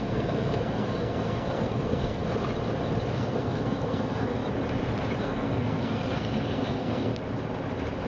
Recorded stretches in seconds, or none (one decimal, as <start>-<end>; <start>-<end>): 2.2-3.1; 4.4-5.2; 7.1-8.1